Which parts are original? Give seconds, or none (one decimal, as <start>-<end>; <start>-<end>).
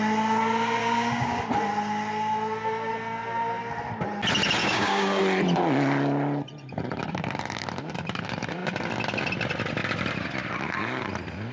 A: 0.0-0.8; 1.4-4.6; 5.2-11.5